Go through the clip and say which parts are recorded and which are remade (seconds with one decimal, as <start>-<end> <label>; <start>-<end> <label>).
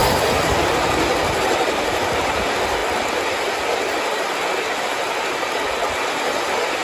0.0-1.8 recorded; 1.8-2.8 remade; 2.8-5.5 recorded; 5.5-6.8 remade